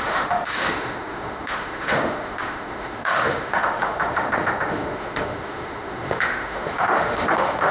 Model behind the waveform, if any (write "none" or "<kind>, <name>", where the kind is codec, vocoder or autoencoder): autoencoder, DAC-VAE